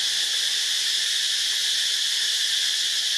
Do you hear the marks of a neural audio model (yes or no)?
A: no